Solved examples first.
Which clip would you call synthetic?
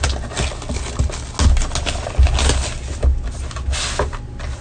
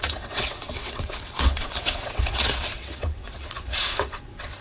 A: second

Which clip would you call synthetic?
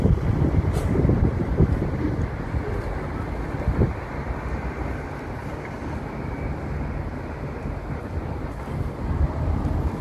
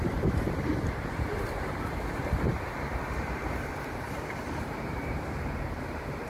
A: second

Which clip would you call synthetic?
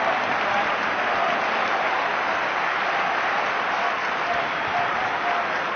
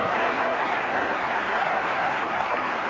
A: second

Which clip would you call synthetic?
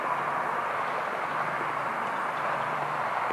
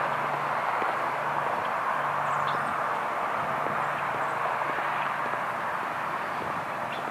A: first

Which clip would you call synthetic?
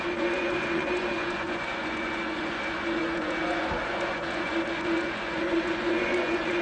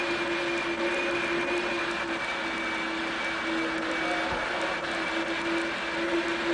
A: first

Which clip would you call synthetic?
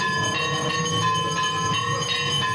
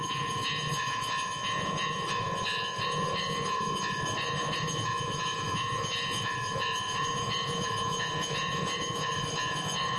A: second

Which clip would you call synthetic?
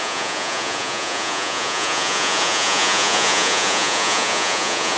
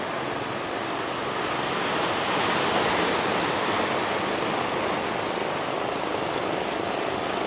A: first